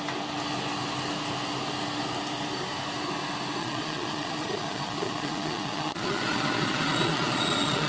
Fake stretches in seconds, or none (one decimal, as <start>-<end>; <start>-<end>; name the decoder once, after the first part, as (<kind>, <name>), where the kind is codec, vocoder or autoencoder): 3.6-7.9 (vocoder, Vocos)